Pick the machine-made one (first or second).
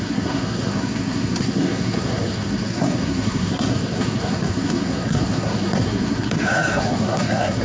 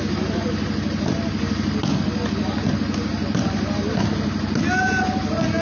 first